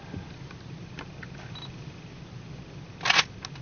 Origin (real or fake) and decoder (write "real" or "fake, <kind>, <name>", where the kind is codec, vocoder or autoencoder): real